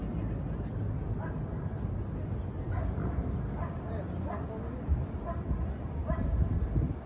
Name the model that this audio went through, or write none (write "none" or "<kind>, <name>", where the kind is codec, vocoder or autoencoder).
none